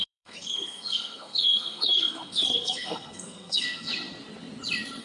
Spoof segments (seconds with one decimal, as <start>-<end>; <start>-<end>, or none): 0.0-3.9